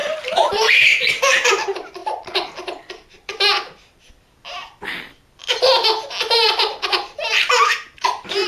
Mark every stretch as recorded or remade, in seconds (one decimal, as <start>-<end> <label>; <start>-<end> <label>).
0.0-3.3 remade; 3.3-6.2 recorded; 6.2-8.5 remade